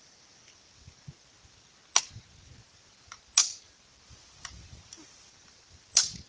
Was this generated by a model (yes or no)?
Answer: no